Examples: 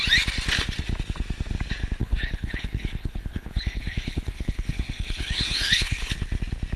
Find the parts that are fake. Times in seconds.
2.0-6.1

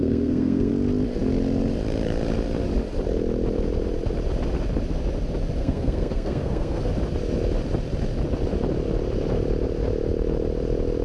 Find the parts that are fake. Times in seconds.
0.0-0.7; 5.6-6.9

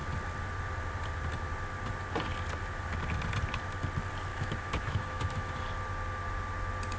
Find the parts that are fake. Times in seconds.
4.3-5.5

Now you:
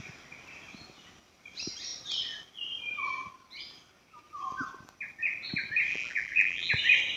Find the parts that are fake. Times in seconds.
5.9-6.7

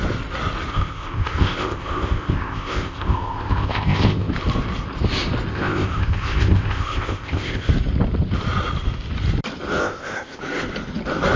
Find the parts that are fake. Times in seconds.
0.7-4.3; 5.5-7.7; 9.8-10.4

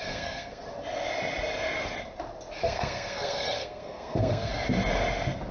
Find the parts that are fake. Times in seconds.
0.0-0.6; 2.6-4.5

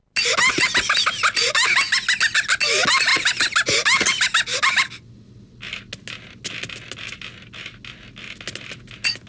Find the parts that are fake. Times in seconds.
none